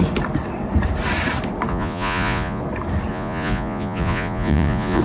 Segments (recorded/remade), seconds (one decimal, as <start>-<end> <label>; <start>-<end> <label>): 0.0-1.7 recorded; 1.7-2.6 remade; 2.6-3.1 recorded; 3.1-5.0 remade